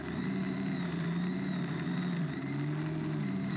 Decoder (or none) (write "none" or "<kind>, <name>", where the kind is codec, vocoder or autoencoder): none